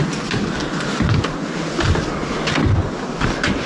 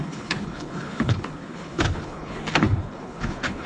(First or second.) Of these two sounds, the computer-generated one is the second